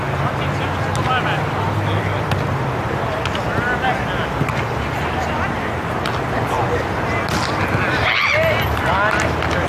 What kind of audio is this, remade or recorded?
recorded